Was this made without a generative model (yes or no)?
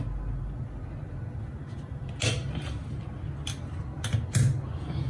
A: yes